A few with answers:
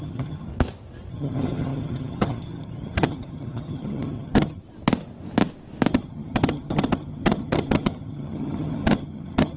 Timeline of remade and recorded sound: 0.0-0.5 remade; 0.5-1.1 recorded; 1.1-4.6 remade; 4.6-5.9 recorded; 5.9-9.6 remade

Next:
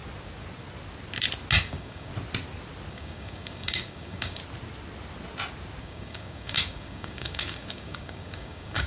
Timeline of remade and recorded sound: 0.0-1.7 recorded; 1.7-2.1 remade; 2.1-2.9 recorded; 2.9-4.4 remade; 4.4-5.8 recorded; 5.8-8.9 remade

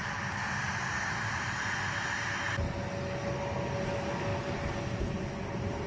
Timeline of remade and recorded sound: 0.0-5.9 recorded

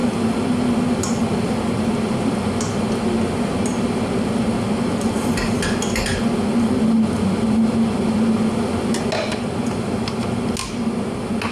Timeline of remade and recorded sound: 0.0-11.5 recorded